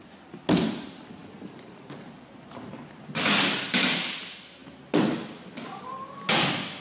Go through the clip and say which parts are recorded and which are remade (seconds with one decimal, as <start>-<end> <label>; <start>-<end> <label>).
0.0-6.8 recorded